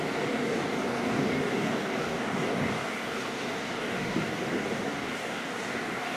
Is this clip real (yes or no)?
no